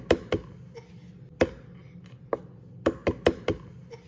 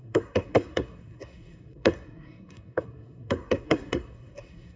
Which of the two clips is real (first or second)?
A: first